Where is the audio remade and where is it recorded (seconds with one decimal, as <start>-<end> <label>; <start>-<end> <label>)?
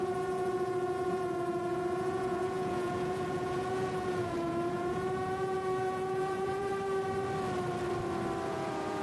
0.0-6.7 remade; 6.7-8.5 recorded; 8.5-9.0 remade